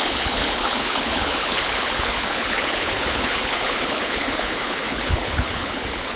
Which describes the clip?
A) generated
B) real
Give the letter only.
A